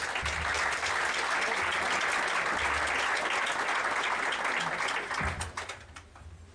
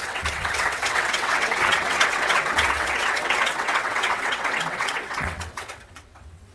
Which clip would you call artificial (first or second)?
second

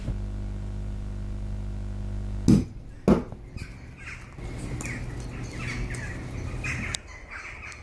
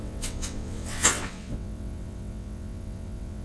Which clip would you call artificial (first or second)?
second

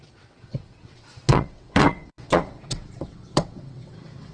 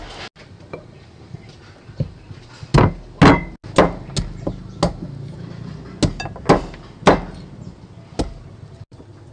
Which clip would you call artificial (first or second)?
first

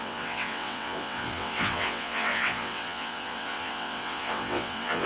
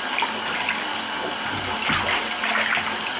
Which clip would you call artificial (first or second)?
first